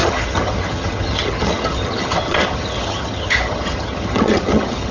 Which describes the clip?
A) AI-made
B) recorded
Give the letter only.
A